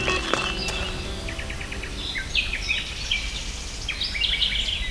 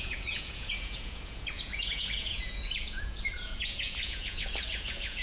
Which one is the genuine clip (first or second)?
first